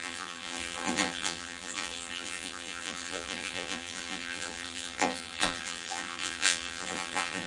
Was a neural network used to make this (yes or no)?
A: yes